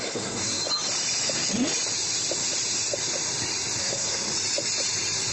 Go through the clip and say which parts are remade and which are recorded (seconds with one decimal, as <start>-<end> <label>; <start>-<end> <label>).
0.0-0.6 remade; 0.6-3.8 recorded; 3.8-4.3 remade; 4.3-5.3 recorded